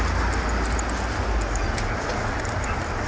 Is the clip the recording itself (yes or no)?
yes